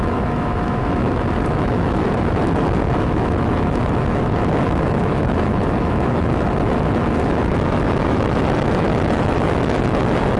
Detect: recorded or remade remade